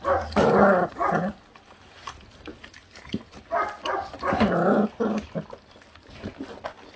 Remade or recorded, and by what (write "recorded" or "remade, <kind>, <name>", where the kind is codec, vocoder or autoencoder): recorded